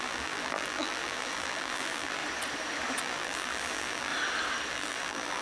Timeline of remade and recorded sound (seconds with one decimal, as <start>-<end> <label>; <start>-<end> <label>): 0.0-2.2 remade; 2.2-3.0 recorded; 3.0-4.1 remade; 4.1-4.7 recorded; 4.7-5.4 remade